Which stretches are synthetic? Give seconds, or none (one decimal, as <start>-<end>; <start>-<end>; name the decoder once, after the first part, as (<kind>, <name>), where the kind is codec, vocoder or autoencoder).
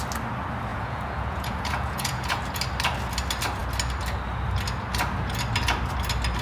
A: 0.7-2.4 (vocoder, Vocos)